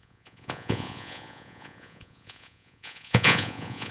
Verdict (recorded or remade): remade